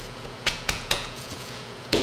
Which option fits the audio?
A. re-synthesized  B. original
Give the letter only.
A